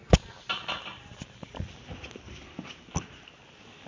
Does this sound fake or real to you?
real